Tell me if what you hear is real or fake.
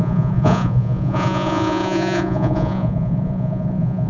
fake